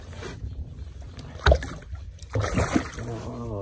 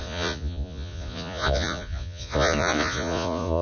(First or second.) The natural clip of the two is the first